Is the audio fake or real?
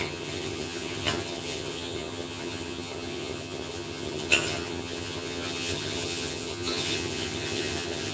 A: fake